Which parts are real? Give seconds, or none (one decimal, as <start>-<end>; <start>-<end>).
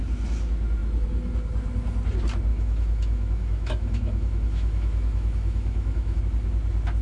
0.0-2.5; 6.2-7.0